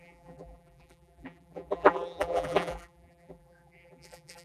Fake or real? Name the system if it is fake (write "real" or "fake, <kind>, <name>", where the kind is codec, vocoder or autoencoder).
fake, vocoder, BigVGAN v2